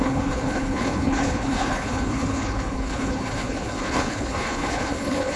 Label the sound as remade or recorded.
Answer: remade